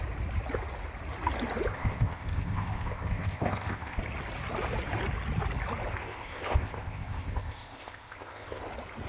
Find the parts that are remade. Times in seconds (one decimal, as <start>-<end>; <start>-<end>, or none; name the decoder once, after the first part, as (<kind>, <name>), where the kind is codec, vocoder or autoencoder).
1.7-4.0 (codec, ZipCodec); 6.0-8.6